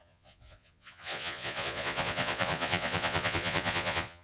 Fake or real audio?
fake